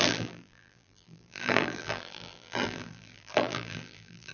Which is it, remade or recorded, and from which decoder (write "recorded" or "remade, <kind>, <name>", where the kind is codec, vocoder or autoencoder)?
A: remade, vocoder, BigVGAN v2